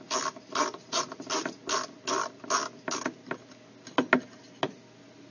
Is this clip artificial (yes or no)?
no